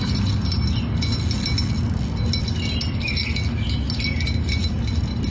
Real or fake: real